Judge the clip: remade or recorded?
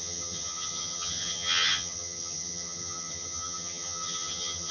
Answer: remade